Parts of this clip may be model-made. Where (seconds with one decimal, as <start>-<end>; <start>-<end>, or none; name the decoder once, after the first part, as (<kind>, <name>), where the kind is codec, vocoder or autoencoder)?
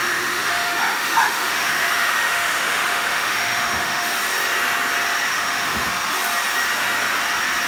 0.0-4.1 (autoencoder, DAC-VAE); 5.3-5.9